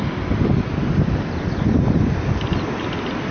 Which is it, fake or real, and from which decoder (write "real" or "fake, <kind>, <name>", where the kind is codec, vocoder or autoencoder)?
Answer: real